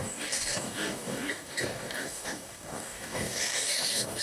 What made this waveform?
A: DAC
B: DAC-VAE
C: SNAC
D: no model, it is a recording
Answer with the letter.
A